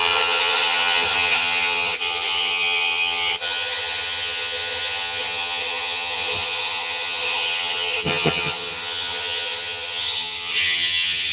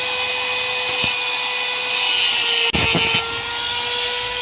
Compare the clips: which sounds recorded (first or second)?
second